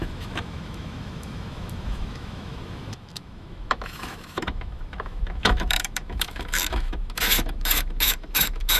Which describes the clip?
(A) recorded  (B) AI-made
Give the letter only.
B